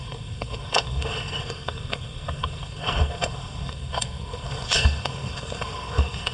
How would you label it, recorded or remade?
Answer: remade